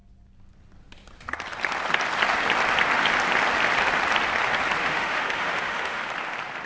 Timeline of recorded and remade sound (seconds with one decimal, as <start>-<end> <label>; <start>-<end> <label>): 0.0-4.8 recorded; 4.8-6.0 remade; 6.0-6.7 recorded